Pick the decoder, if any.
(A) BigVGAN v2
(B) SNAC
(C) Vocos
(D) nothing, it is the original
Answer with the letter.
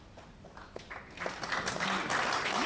A